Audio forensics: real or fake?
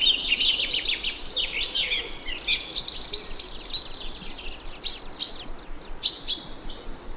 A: real